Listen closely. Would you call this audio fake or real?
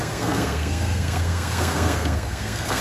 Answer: fake